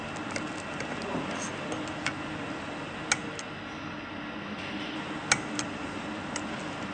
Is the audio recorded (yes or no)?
yes